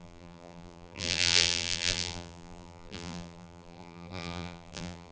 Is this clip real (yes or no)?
no